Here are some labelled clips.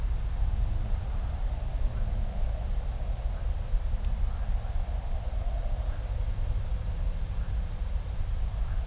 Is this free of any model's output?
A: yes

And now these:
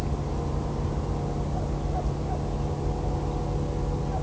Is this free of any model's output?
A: yes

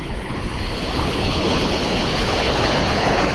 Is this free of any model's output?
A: no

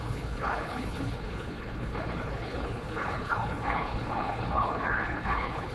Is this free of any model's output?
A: no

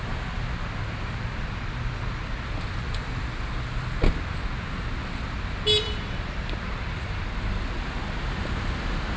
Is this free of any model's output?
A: yes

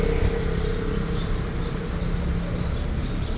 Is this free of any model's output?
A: yes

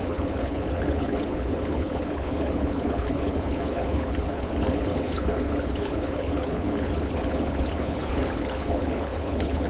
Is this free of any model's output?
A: no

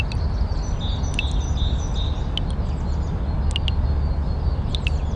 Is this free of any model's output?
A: yes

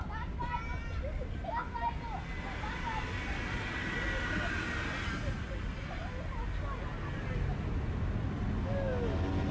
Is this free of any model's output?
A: yes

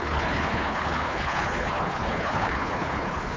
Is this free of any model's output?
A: no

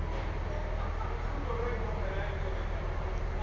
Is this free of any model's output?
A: yes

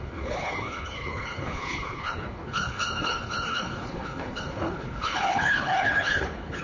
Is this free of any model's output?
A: no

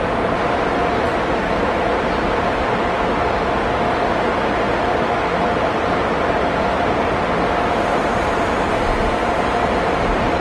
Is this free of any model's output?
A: yes